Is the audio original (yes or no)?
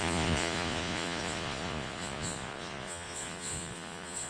no